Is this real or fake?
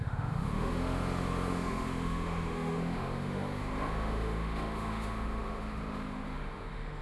fake